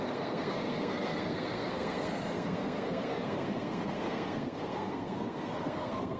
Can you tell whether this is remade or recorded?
remade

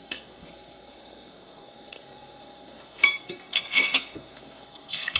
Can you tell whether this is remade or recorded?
remade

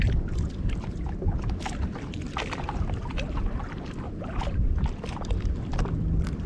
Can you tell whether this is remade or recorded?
recorded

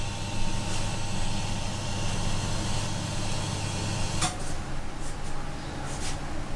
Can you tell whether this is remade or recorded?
recorded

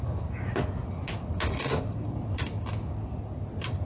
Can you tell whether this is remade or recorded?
recorded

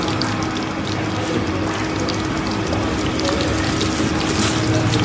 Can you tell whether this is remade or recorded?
recorded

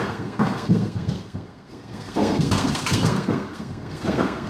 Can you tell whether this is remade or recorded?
remade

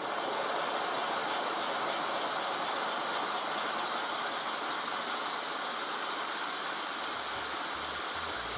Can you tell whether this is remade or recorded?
recorded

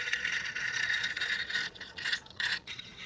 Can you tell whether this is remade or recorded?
remade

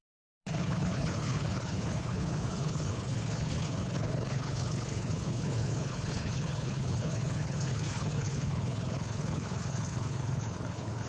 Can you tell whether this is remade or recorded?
remade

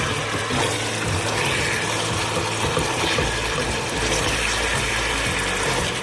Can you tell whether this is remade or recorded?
recorded